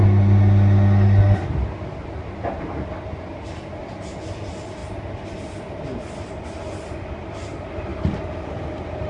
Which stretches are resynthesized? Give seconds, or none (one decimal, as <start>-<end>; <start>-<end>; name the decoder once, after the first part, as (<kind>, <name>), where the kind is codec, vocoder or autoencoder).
2.0-2.6 (vocoder, BigVGAN v2)